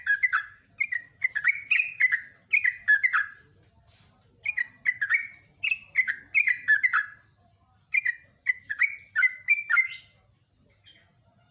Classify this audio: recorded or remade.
recorded